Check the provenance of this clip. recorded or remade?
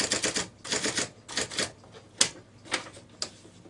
recorded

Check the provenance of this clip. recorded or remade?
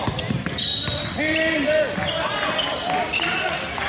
recorded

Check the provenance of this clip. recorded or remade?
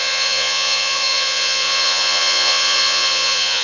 remade